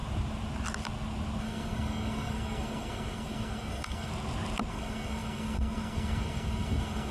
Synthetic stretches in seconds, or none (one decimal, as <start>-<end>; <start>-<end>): 1.4-4.1; 4.7-7.1